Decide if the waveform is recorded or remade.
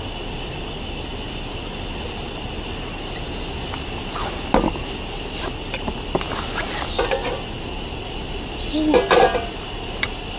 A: recorded